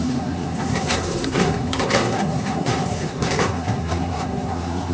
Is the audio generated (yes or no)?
yes